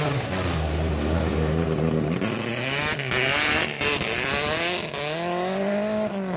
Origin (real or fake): real